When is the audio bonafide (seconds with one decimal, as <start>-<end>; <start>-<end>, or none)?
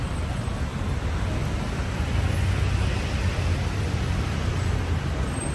0.7-4.0